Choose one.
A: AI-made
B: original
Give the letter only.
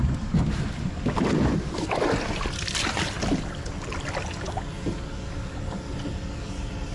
B